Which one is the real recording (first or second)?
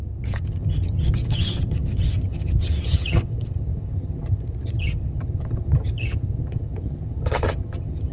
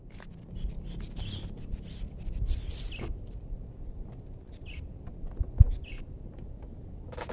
second